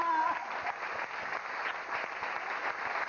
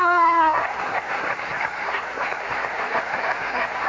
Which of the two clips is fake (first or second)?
second